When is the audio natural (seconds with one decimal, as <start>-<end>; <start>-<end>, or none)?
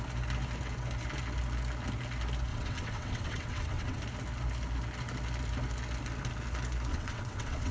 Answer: 0.0-2.5; 4.0-6.9